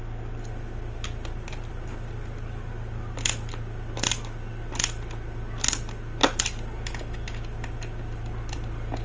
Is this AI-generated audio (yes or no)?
no